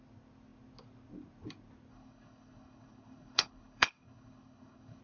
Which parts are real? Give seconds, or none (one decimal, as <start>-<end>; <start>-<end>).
0.0-1.9